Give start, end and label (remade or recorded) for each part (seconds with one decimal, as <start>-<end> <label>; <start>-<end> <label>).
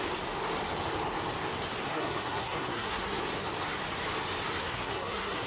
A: 0.0-1.9 recorded; 1.9-3.2 remade; 3.2-4.6 recorded; 4.6-5.5 remade